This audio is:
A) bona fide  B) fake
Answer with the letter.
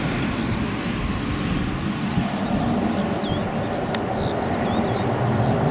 A